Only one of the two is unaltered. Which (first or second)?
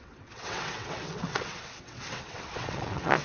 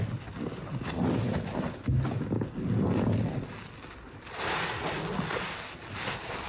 second